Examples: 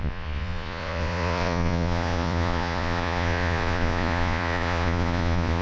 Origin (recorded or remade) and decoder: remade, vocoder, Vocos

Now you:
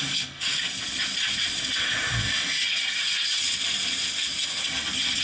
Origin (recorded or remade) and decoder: recorded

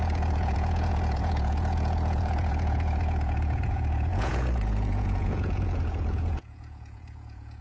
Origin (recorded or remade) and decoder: remade, vocoder, Vocos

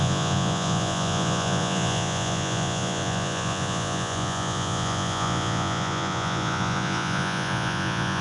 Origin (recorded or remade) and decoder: remade, vocoder, Vocos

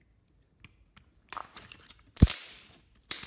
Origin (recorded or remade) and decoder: recorded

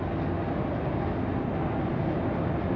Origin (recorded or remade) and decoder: recorded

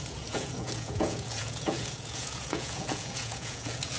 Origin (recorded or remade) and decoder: remade, vocoder, Vocos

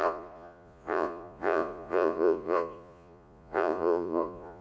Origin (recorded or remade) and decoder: remade, vocoder, Vocos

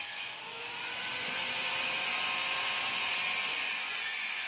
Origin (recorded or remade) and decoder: remade, vocoder, Vocos